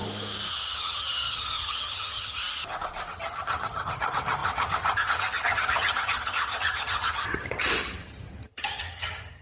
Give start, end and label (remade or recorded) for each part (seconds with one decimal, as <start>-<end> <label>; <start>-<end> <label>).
0.0-0.5 recorded; 0.5-2.4 remade; 2.4-3.1 recorded; 3.1-9.4 remade